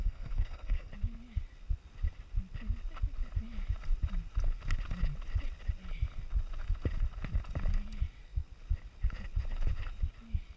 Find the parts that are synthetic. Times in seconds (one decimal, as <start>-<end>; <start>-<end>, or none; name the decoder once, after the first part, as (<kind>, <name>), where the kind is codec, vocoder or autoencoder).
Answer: 0.0-0.9 (codec, SNAC)